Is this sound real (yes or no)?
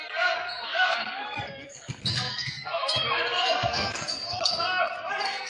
no